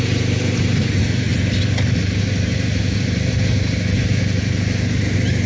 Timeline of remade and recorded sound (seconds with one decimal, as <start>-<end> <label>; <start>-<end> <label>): 0.0-5.5 recorded